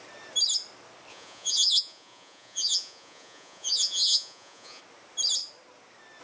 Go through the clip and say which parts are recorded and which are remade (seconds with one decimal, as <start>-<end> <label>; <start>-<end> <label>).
0.0-1.1 recorded; 1.1-4.8 remade; 4.8-6.2 recorded